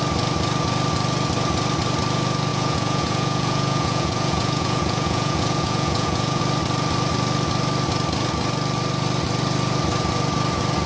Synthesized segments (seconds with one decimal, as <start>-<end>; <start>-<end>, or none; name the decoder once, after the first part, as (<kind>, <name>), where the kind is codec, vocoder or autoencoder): 2.5-6.4 (vocoder, Vocos)